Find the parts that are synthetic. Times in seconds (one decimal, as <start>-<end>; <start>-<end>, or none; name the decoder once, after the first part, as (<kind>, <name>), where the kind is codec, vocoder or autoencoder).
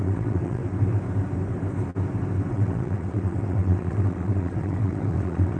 0.0-0.6 (vocoder, WaveNeXt); 2.5-5.6